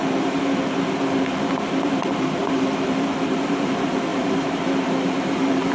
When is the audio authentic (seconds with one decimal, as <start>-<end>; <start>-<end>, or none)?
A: none